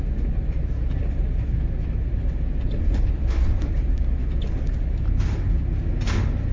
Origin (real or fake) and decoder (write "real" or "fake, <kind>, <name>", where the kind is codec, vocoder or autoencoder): real